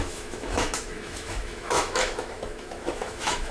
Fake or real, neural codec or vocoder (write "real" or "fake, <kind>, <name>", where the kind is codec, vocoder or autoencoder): fake, autoencoder, DAC-VAE